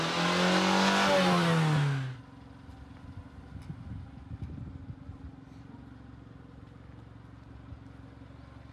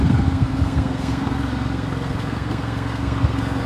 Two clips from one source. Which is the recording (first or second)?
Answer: first